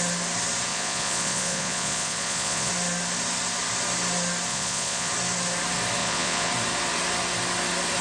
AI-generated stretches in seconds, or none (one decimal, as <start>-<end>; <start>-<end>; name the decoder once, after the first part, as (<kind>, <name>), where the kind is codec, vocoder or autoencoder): 0.7-2.7 (vocoder, Vocos); 4.5-5.1; 6.0-6.5